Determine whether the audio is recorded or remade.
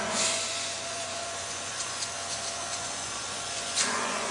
remade